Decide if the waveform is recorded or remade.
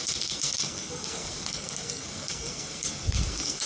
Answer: remade